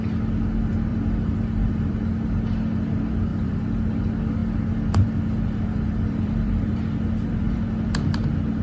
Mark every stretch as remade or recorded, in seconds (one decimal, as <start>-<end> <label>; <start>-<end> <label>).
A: 0.0-0.9 recorded; 0.9-2.0 remade; 2.0-3.3 recorded; 3.3-4.0 remade; 4.0-4.4 recorded; 4.4-7.8 remade; 7.8-8.6 recorded